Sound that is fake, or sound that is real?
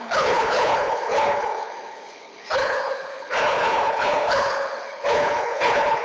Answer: fake